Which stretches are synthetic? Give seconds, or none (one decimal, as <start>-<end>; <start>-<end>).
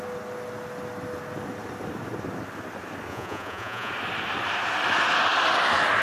3.1-3.9